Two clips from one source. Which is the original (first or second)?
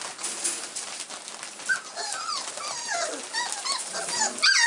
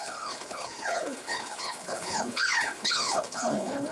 first